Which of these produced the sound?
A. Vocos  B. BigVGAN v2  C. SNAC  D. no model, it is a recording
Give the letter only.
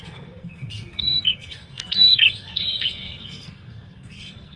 C